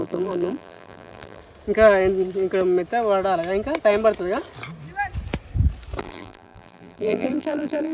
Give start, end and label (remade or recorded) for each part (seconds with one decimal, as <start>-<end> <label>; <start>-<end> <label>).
0.0-1.4 remade; 1.4-6.0 recorded; 6.0-7.9 remade